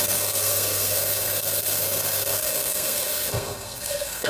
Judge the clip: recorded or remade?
remade